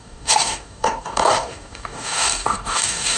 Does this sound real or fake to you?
fake